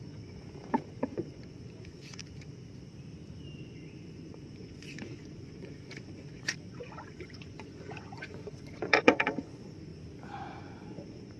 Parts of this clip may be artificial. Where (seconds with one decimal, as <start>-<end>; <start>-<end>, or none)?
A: 0.0-2.2; 3.6-9.9; 10.6-11.4